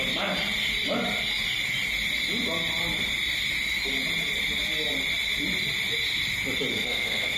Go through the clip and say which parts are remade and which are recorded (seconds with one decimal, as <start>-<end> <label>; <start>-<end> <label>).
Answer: 0.0-6.7 recorded; 6.7-7.4 remade